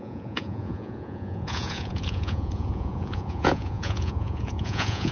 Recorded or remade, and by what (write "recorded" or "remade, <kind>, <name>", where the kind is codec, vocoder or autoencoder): remade, vocoder, Vocos